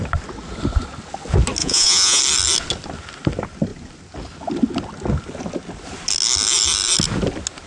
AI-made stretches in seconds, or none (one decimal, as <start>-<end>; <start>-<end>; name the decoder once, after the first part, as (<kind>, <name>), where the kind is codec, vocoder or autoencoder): 1.6-2.2 (vocoder, Vocos)